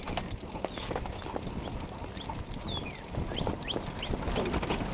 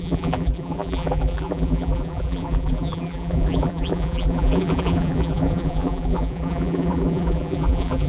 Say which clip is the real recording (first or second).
first